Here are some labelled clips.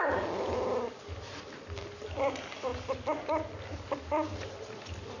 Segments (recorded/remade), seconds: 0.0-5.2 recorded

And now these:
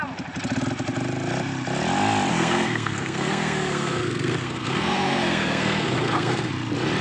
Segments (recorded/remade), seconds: 0.0-2.3 recorded; 2.3-6.5 remade; 6.5-7.0 recorded